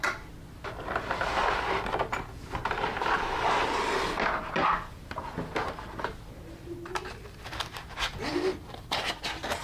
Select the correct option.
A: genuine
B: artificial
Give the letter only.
A